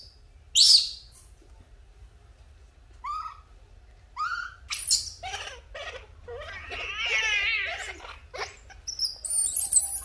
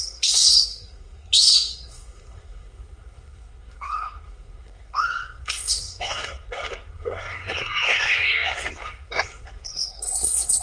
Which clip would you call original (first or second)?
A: first